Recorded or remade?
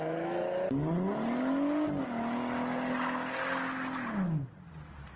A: recorded